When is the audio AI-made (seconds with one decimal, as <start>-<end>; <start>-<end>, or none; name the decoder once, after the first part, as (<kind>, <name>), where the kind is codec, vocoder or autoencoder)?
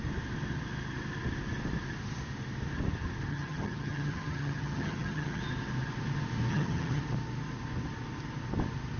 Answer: 3.3-5.4 (vocoder, HiFi-GAN); 6.5-7.0